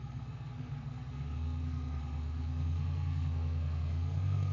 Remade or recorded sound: remade